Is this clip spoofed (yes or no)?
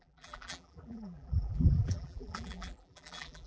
yes